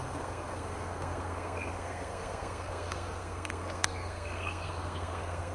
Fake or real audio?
fake